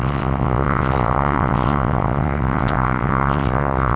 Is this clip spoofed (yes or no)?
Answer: yes